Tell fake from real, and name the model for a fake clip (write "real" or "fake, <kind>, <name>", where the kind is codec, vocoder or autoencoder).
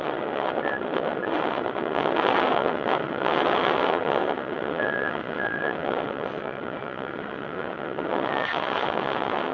fake, vocoder, WaveNeXt